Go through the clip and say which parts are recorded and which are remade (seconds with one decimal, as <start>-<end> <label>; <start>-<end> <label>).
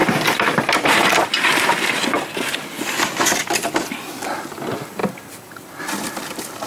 0.0-1.5 remade; 1.5-6.7 recorded